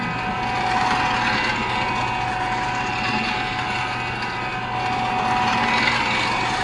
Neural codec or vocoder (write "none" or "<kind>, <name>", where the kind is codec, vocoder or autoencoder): none